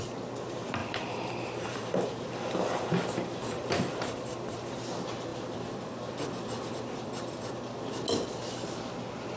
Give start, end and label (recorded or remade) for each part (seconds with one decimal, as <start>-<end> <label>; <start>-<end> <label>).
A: 0.0-0.8 recorded; 0.8-4.7 remade; 4.7-5.3 recorded; 5.3-7.6 remade; 7.6-9.4 recorded